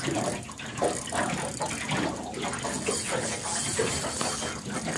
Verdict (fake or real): real